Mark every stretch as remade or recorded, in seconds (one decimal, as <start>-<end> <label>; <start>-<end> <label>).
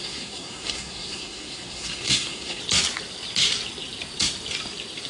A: 0.0-2.6 remade; 2.6-5.1 recorded